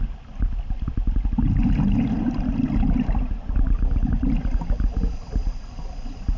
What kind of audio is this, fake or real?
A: real